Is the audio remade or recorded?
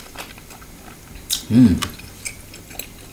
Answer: recorded